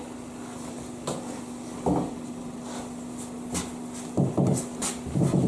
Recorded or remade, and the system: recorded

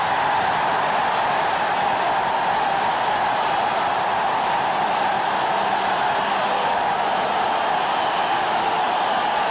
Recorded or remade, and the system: recorded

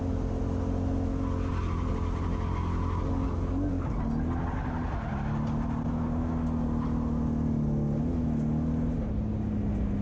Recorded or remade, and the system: recorded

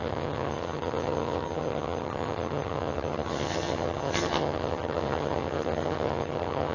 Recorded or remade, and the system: remade, vocoder, HiFi-GAN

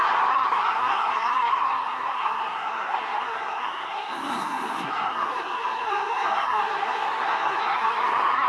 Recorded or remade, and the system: remade, codec, SNAC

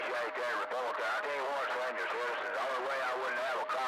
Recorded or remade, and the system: recorded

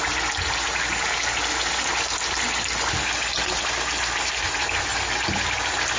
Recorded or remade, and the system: recorded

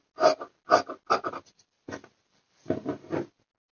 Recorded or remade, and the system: recorded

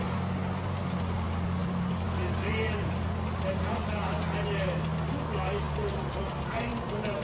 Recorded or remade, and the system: recorded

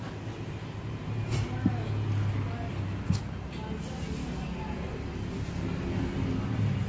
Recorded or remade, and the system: recorded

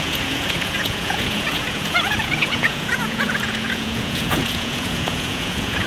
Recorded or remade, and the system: remade, vocoder, Vocos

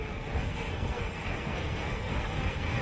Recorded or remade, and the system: remade, codec, SNAC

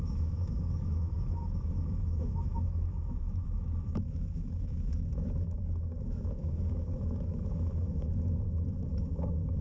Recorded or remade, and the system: remade, autoencoder, DAC-VAE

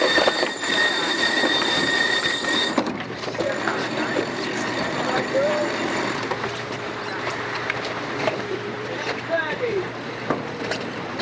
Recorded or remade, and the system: remade, vocoder, BigVGAN v2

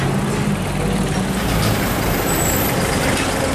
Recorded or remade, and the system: recorded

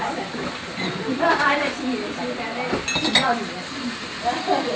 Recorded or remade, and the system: recorded